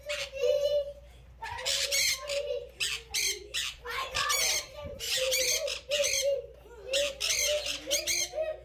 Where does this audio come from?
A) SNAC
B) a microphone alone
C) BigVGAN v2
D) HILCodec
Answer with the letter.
B